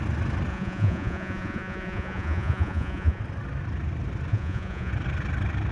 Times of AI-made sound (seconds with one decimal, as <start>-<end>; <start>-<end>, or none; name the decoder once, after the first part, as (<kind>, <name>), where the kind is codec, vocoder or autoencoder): 0.5-3.2 (vocoder, Vocos); 4.3-4.9